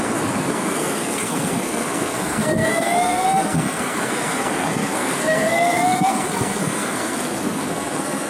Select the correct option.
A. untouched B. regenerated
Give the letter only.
B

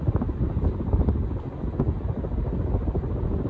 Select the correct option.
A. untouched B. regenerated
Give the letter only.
A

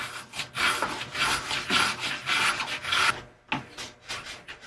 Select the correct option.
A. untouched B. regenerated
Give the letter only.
A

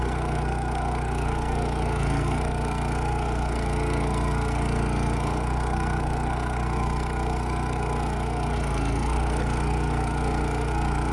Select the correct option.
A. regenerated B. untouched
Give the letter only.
A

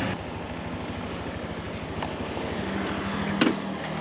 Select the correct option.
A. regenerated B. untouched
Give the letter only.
B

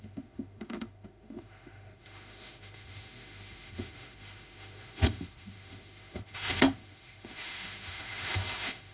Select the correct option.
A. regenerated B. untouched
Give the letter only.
A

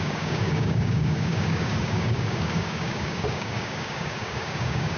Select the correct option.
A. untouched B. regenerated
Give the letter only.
B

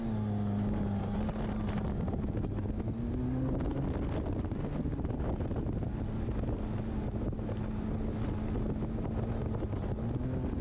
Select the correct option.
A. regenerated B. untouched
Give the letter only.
B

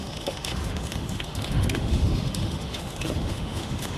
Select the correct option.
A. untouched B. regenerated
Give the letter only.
B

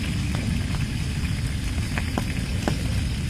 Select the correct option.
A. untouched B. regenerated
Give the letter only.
A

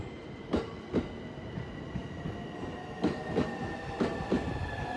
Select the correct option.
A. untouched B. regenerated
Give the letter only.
A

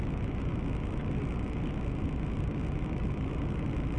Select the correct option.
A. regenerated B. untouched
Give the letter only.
B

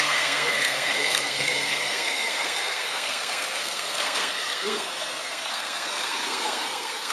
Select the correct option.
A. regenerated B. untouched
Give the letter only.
A